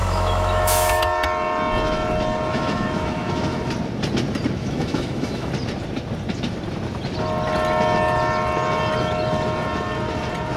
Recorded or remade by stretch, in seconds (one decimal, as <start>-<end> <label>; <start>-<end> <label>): 0.0-1.0 remade; 1.0-2.5 recorded; 2.5-3.7 remade; 3.7-4.6 recorded; 4.6-5.5 remade; 5.5-10.6 recorded